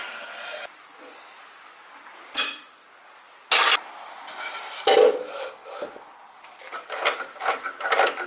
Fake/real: real